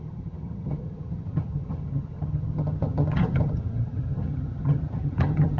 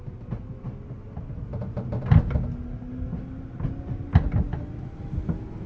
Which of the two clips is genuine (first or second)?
second